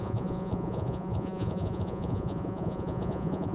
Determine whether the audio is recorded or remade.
remade